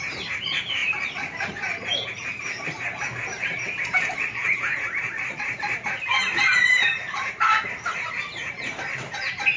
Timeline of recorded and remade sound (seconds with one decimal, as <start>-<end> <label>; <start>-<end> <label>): 0.0-9.6 remade